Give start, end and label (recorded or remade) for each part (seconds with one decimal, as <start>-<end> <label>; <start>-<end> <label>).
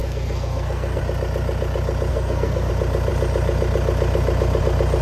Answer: 0.0-1.0 remade; 1.0-2.1 recorded; 2.1-2.7 remade; 2.7-5.0 recorded